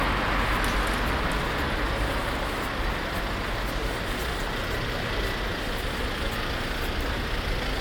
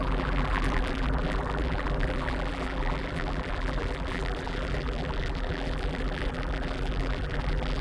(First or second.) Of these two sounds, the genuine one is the first